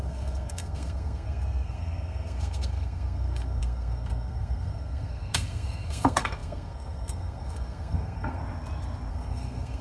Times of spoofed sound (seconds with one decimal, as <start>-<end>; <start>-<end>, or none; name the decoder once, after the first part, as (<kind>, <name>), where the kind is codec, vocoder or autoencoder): 0.0-8.4 (codec, SNAC); 9.1-9.8